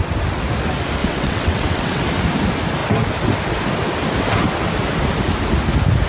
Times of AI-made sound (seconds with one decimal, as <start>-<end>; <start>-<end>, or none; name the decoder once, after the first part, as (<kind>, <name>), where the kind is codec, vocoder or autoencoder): 1.0-2.0 (vocoder, WaveNeXt)